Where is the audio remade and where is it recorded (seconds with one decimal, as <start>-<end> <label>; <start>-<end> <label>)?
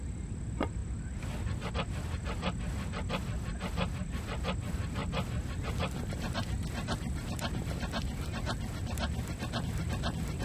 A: 0.0-10.4 recorded